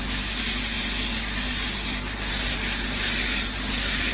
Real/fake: real